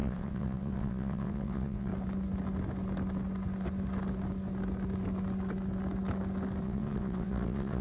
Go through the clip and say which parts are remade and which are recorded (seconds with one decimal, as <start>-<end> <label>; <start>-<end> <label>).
0.0-1.9 remade; 1.9-6.6 recorded; 6.6-7.8 remade